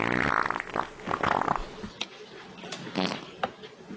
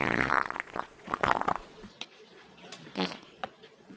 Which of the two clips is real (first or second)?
first